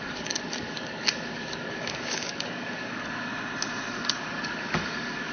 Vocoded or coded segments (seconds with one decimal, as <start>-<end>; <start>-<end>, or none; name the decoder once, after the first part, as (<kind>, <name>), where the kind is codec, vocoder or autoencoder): 0.0-3.3 (codec, DAC); 3.9-5.3